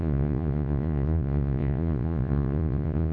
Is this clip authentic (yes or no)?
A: no